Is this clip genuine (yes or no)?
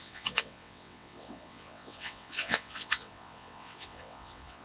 no